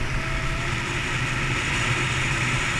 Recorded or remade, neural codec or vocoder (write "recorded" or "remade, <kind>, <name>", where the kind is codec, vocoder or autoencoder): recorded